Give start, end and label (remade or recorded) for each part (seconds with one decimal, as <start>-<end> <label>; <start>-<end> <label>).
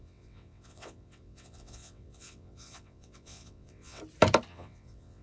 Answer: 0.0-4.0 remade; 4.0-4.5 recorded; 4.5-5.2 remade